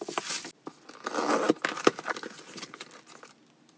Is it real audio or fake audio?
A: real